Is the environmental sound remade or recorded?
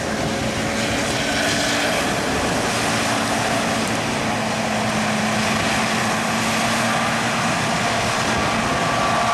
recorded